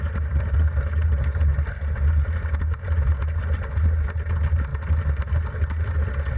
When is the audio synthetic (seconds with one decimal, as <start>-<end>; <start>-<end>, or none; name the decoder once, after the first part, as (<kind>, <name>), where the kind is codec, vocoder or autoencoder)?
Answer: none

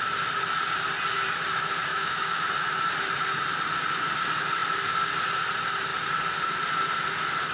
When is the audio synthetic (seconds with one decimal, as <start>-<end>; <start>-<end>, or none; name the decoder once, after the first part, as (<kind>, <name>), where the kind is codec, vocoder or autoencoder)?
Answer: 1.9-2.5 (autoencoder, DAC-VAE)

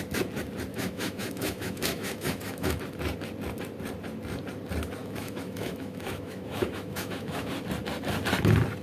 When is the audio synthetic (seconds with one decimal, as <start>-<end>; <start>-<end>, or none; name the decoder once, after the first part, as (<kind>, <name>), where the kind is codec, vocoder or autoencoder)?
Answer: 0.7-2.8 (autoencoder, DAC-VAE); 5.0-7.5

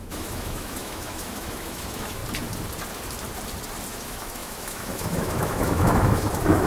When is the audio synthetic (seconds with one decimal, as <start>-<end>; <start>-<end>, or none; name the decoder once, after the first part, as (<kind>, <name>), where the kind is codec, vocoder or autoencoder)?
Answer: 0.0-2.2 (autoencoder, DAC-VAE); 3.9-6.7